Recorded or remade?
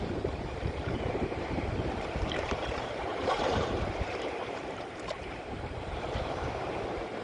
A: remade